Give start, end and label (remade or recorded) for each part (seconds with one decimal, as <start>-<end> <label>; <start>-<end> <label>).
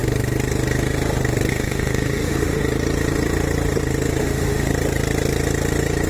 0.0-1.5 recorded; 1.5-2.6 remade; 2.6-4.2 recorded; 4.2-4.7 remade; 4.7-6.1 recorded